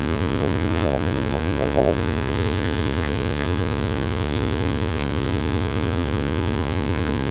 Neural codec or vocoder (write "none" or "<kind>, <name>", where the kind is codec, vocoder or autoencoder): vocoder, Vocos